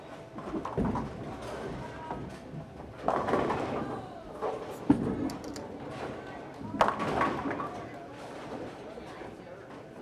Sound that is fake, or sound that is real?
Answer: real